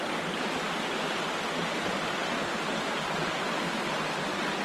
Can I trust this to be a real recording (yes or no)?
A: yes